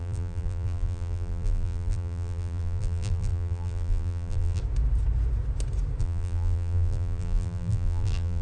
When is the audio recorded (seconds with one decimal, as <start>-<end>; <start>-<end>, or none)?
4.6-6.0